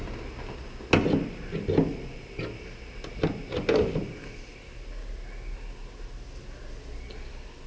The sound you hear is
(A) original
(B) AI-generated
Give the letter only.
A